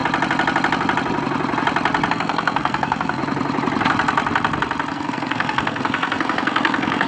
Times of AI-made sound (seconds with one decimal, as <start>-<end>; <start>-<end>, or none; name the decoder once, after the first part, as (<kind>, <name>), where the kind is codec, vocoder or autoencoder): 2.1-3.2 (codec, SNAC); 4.9-7.1